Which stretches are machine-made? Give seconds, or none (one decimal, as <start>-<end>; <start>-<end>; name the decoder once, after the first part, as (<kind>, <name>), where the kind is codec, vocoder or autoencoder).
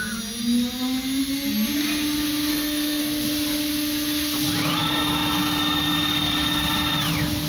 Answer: 2.5-3.0 (codec, SNAC)